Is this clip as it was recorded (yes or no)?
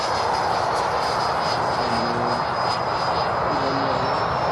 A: yes